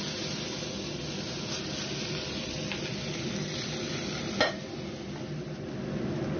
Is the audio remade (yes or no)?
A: no